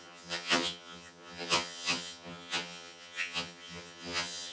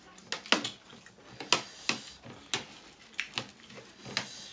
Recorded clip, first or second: second